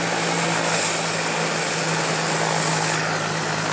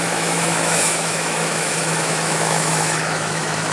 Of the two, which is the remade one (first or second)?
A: second